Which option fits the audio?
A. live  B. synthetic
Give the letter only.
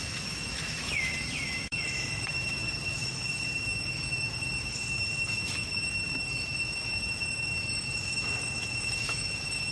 B